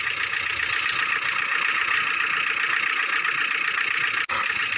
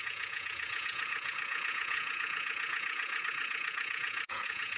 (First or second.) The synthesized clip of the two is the second